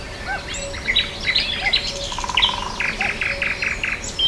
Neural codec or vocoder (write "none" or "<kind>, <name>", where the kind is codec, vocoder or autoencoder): none